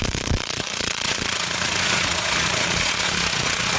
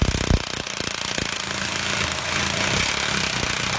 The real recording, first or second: second